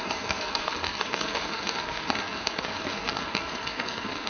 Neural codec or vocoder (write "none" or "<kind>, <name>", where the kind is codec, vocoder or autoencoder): codec, SNAC